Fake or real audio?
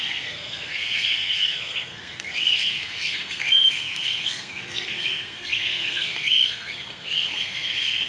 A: fake